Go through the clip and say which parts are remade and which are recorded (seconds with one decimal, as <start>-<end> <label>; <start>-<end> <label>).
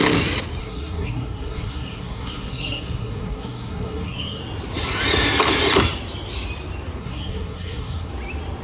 0.0-0.6 recorded; 0.6-4.4 remade; 4.4-7.0 recorded; 7.0-8.1 remade; 8.1-8.6 recorded